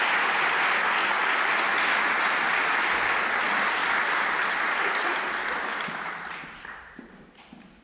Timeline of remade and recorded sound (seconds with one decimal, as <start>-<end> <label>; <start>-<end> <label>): 0.0-3.8 recorded; 3.8-7.8 remade